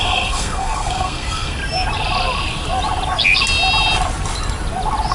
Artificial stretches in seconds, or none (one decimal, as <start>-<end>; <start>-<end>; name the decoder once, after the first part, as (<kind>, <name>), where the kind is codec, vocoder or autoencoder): 0.0-1.6 (codec, SNAC)